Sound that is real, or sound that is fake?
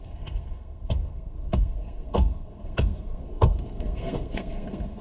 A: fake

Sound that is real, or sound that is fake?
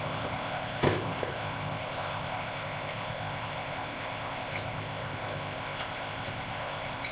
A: fake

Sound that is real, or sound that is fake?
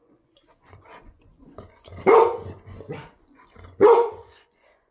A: fake